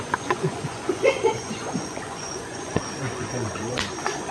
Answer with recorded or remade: remade